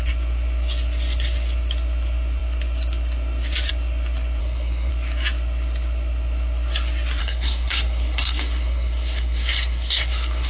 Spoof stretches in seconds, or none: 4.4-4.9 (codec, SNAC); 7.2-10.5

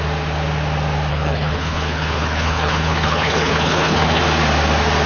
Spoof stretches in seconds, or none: 1.1-4.2 (codec, HILCodec)

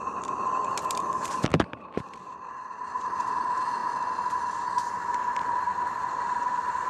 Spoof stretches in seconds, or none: 1.5-3.4 (vocoder, BigVGAN v2); 5.7-6.9

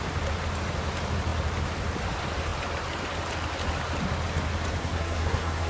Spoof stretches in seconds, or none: 4.8-5.7 (codec, SNAC)

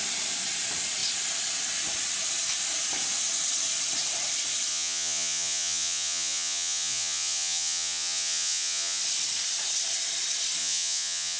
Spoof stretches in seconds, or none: 4.7-9.0 (vocoder, Vocos); 10.6-11.4

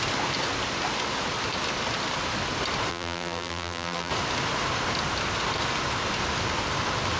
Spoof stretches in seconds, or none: 2.9-4.1 (vocoder, BigVGAN v2)